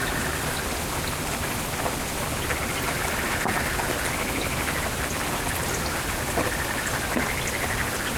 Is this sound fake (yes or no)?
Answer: yes